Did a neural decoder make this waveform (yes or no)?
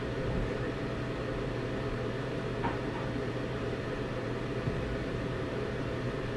yes